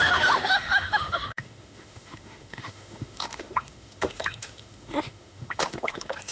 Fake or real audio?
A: fake